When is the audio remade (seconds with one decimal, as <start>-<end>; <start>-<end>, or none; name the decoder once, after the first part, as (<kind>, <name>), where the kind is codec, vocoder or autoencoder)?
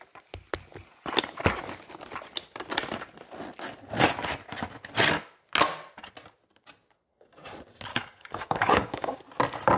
7.9-9.2 (codec, DAC)